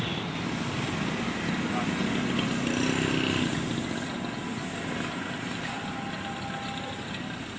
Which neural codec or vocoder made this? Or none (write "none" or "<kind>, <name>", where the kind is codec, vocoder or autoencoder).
none